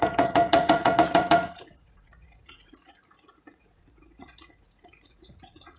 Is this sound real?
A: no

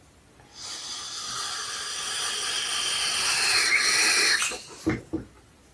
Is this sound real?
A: yes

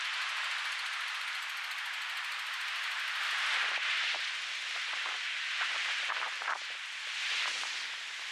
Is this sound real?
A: yes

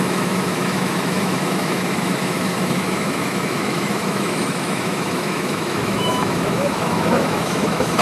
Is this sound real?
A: no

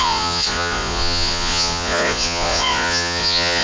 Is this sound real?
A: no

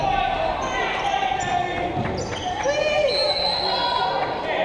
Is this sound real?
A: yes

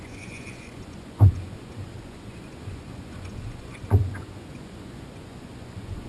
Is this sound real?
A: no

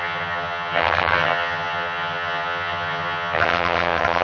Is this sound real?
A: no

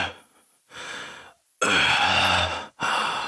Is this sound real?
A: yes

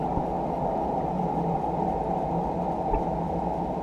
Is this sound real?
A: yes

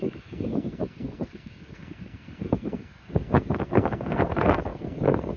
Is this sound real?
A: no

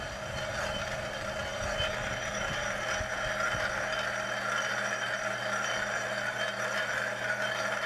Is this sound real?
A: yes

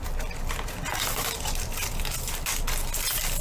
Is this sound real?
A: yes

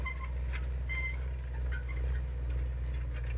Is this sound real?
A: yes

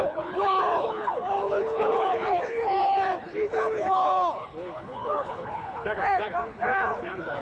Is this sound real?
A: no